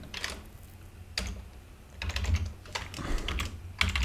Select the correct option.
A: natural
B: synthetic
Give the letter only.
A